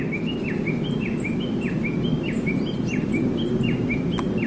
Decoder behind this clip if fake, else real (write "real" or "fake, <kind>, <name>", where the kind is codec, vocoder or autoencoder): real